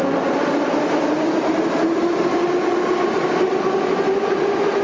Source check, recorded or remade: recorded